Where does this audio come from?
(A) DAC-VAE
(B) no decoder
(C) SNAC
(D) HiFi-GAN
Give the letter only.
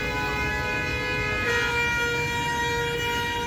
B